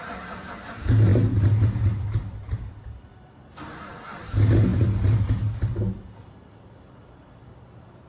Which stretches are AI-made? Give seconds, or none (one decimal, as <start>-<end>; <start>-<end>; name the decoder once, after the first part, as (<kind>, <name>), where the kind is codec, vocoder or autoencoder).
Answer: none